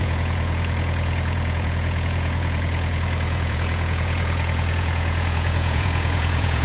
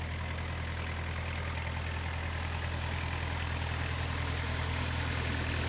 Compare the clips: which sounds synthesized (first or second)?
first